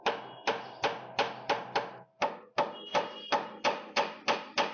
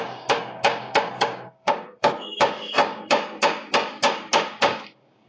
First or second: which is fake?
second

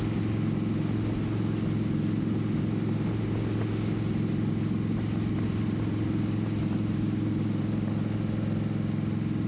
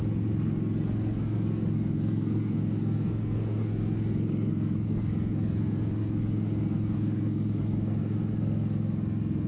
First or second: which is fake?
second